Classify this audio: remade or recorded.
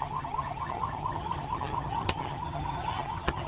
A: remade